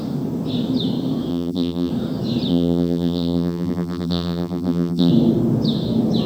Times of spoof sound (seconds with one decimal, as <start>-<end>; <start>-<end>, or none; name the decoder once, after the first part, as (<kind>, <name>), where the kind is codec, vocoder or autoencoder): 1.3-1.9 (vocoder, BigVGAN v2); 2.5-5.1

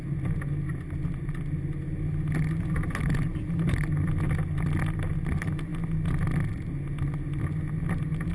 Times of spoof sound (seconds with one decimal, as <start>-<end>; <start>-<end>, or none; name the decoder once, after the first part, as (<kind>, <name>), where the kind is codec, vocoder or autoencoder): none

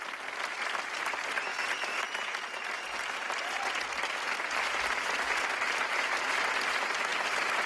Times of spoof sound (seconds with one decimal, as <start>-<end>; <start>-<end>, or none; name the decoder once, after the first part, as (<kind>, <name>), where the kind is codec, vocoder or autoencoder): none

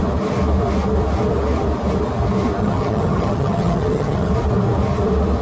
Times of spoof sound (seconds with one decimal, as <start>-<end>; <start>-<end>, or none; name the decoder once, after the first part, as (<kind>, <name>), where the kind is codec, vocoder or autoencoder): 2.6-4.3 (vocoder, HiFi-GAN)